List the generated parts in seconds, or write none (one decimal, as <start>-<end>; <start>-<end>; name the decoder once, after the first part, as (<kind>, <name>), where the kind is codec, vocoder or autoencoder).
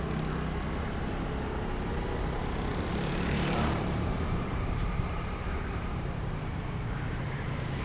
2.7-7.8 (vocoder, BigVGAN v2)